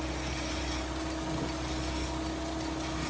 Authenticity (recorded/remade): recorded